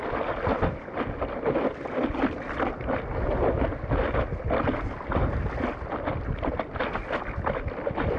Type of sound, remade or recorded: recorded